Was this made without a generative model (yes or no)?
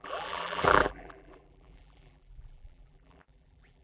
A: no